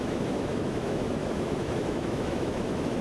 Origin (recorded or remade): remade